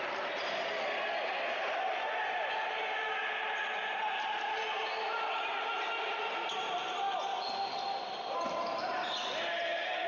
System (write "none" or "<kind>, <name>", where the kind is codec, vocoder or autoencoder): none